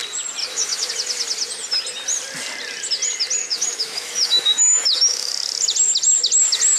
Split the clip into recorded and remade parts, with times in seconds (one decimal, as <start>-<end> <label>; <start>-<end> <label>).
0.0-0.4 recorded; 0.4-0.9 remade; 0.9-3.4 recorded; 3.4-5.3 remade; 5.3-6.8 recorded